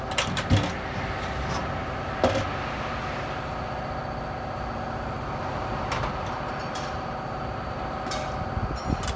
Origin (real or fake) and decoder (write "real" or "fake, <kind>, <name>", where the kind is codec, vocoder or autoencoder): real